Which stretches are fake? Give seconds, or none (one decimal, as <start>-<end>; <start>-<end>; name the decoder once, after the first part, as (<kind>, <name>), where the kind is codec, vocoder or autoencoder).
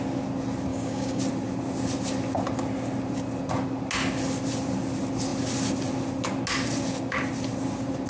0.7-1.2 (codec, DAC)